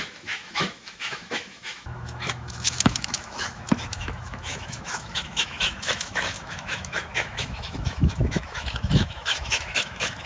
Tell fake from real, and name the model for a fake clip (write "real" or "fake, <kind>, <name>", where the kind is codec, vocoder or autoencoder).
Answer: fake, autoencoder, DAC-VAE